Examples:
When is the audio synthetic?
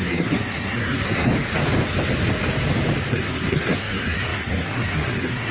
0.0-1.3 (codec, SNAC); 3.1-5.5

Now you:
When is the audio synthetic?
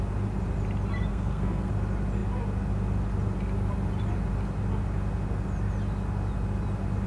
1.1-1.7 (codec, SNAC)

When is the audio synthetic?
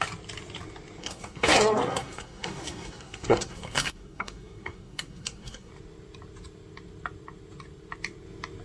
1.0-5.7 (codec, SNAC)